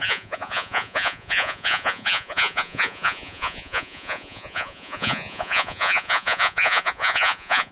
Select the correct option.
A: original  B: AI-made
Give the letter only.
B